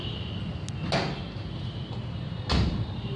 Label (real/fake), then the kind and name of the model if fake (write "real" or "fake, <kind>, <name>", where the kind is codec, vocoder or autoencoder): real